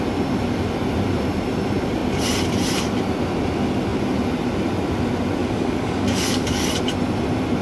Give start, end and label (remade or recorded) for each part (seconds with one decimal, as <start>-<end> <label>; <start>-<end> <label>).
0.0-5.4 recorded; 5.4-6.7 remade; 6.7-7.6 recorded